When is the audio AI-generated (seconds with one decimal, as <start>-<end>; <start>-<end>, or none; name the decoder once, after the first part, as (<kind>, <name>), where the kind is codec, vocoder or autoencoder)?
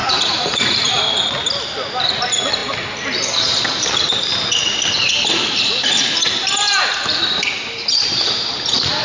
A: 0.0-1.0 (vocoder, Vocos)